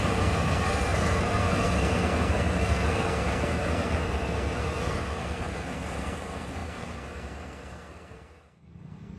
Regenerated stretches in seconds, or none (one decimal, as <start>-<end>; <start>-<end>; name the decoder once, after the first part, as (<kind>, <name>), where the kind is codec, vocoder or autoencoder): 0.0-9.2 (codec, SNAC)